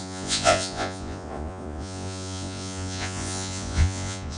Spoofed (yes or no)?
yes